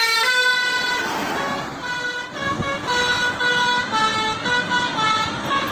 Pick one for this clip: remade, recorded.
recorded